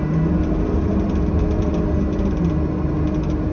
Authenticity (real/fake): real